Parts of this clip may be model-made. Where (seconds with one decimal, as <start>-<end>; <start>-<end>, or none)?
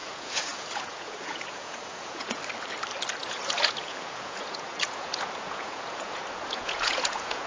0.0-2.4; 3.2-7.5